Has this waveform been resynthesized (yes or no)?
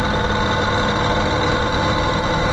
no